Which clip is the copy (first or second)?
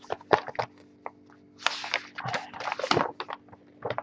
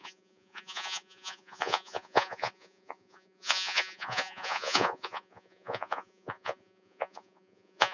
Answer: second